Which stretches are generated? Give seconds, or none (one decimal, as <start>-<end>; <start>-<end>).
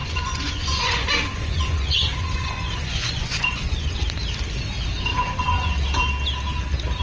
0.0-3.9; 5.1-5.7